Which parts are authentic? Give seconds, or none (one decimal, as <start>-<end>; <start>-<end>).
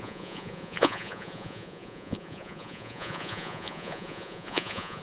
none